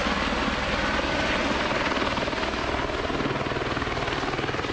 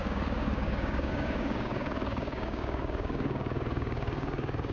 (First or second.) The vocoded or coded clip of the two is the second